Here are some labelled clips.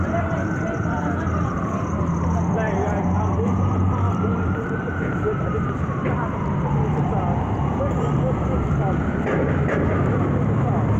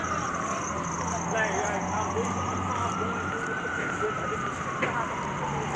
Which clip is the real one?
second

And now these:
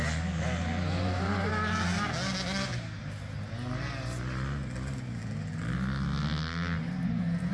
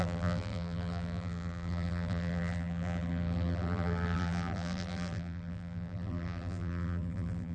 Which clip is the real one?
first